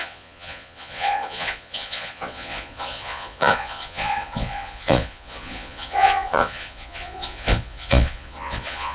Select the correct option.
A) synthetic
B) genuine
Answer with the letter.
A